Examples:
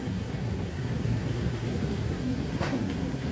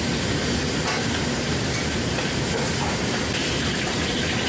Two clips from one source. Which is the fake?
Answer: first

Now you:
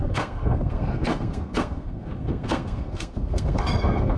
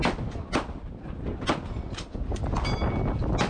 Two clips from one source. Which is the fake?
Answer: first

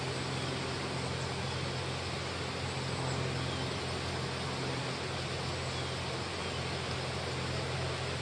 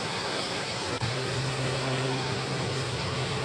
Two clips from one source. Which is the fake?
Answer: second